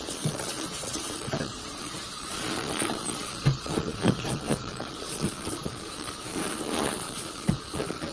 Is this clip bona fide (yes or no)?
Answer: no